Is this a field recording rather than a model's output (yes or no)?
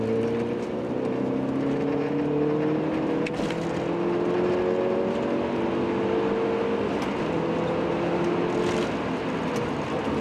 yes